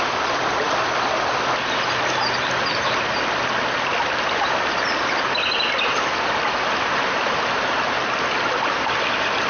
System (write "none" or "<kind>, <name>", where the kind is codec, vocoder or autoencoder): none